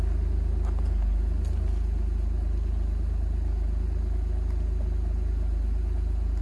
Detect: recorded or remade recorded